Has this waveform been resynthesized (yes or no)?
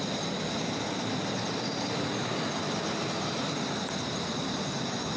no